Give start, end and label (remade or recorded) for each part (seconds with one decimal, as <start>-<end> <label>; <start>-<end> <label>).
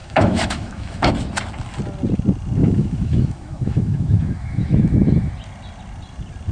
0.0-1.1 remade; 1.1-2.6 recorded; 2.6-5.3 remade; 5.3-6.5 recorded